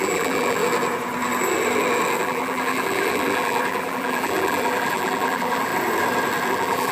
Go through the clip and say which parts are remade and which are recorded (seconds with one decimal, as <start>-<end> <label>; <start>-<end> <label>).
0.0-0.6 remade; 0.6-2.2 recorded; 2.2-5.7 remade; 5.7-6.5 recorded; 6.5-6.9 remade